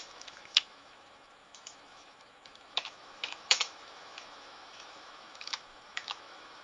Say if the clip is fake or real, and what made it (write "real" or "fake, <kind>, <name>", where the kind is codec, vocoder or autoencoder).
fake, autoencoder, DAC-VAE